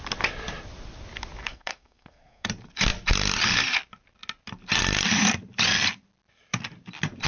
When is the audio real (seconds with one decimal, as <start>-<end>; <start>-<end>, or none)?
0.0-1.4; 2.5-7.3